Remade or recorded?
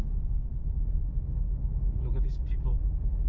recorded